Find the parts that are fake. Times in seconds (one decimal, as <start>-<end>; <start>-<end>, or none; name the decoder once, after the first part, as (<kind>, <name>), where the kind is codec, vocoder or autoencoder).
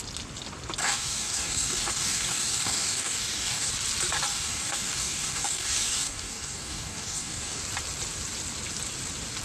0.8-3.7 (codec, DAC); 4.3-7.6